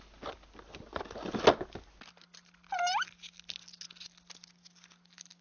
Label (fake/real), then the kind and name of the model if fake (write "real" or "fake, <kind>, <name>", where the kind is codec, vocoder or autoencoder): real